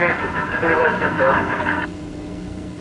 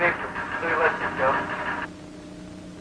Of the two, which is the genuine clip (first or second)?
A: second